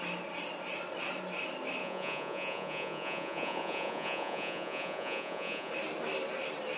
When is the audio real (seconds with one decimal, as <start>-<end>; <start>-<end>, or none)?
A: 0.0-1.8; 5.7-6.8